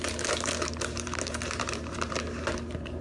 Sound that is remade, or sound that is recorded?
remade